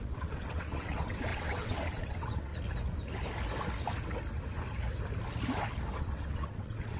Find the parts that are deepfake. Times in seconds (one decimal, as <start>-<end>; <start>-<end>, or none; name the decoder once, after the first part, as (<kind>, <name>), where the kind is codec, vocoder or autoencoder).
0.0-2.5 (vocoder, WaveNeXt); 6.0-7.0